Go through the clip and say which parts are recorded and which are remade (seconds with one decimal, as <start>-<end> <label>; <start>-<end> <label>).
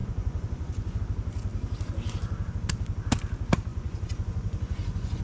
0.0-1.0 remade; 1.0-3.7 recorded; 3.7-5.2 remade